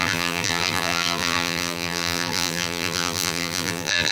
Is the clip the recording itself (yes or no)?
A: no